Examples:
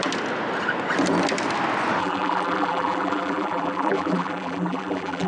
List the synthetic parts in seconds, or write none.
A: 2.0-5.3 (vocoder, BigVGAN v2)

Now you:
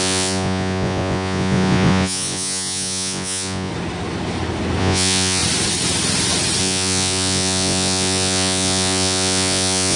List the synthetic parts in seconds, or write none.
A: 0.0-3.7 (vocoder, Vocos); 4.8-5.4; 6.6-10.0

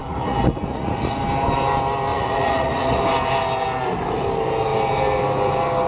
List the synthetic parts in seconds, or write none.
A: 0.0-1.2 (vocoder, Vocos); 2.1-3.0

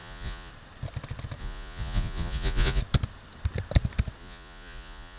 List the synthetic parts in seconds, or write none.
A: 0.0-0.5 (vocoder, Vocos); 1.4-2.8; 4.2-5.2

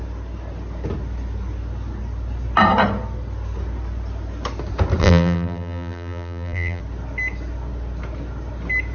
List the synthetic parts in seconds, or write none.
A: 5.0-6.8 (vocoder, BigVGAN v2)